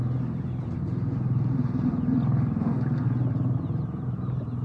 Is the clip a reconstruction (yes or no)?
no